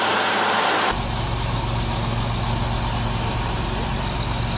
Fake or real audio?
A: real